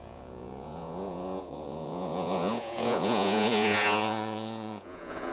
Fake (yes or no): yes